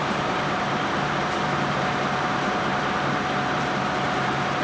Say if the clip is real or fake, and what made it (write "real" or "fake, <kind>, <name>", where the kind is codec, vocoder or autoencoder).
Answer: fake, vocoder, BigVGAN v2